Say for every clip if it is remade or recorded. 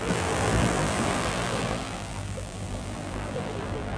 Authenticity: remade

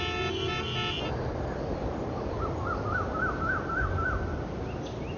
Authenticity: recorded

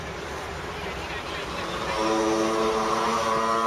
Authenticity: recorded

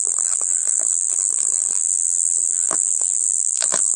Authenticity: remade